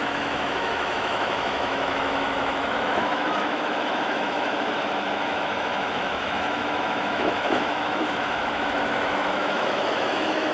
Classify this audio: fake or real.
fake